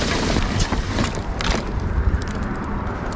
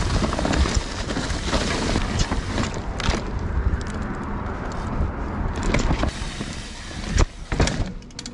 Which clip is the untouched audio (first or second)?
second